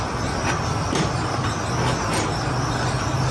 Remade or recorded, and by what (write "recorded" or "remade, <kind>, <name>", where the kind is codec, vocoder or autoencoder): recorded